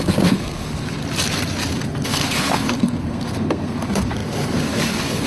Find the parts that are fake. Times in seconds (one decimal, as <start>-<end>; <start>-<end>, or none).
0.0-1.0; 1.7-5.3